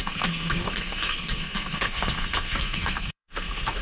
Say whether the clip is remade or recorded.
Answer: remade